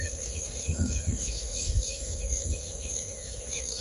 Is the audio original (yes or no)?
no